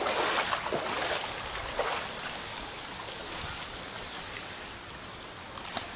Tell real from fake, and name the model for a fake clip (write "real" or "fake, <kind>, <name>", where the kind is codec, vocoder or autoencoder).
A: real